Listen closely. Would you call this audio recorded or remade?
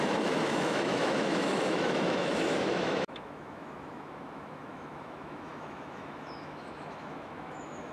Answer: remade